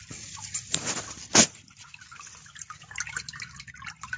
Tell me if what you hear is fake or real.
real